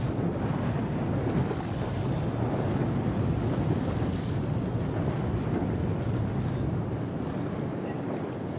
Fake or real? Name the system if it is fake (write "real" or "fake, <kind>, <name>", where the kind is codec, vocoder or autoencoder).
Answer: real